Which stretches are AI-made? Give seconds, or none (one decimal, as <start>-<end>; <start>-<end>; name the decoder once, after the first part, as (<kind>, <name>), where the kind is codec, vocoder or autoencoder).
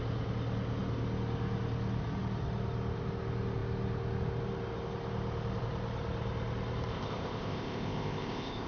6.9-8.7 (codec, ZipCodec)